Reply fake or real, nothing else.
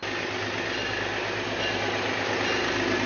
real